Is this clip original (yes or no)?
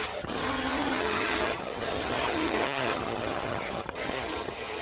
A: no